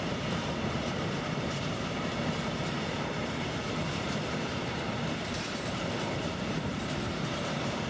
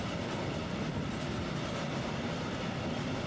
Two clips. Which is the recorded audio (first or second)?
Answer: second